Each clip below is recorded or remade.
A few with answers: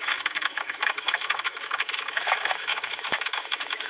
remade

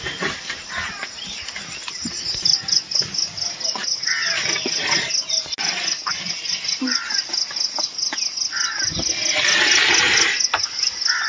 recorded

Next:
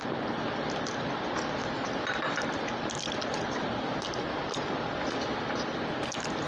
recorded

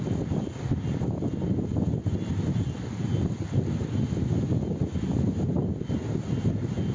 recorded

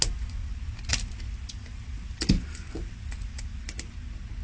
recorded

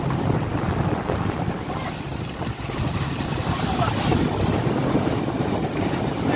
recorded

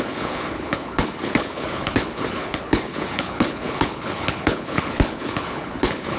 remade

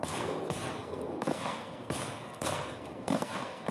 remade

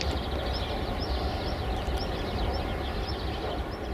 recorded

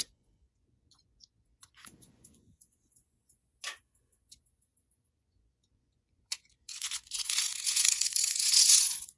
remade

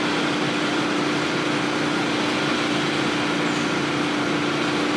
recorded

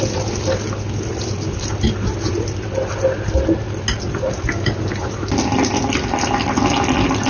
recorded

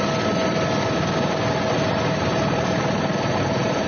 recorded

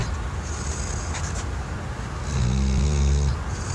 recorded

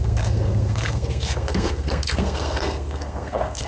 remade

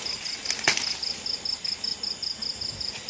recorded